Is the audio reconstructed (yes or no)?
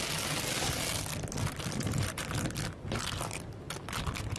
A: no